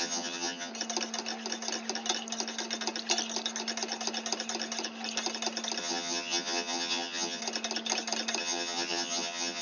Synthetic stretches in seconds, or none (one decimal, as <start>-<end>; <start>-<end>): 0.0-0.7; 5.8-7.4; 8.4-9.6